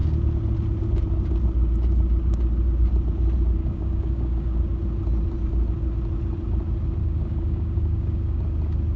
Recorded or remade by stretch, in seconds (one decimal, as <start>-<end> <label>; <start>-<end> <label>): 0.0-3.6 recorded; 3.6-4.6 remade; 4.6-7.0 recorded; 7.0-8.4 remade; 8.4-9.0 recorded